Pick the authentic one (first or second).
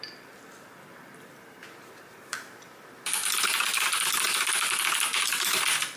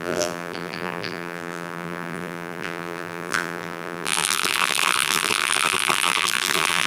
first